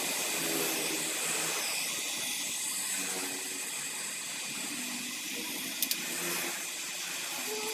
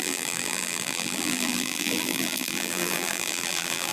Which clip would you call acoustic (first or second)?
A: first